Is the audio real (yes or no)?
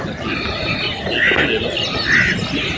yes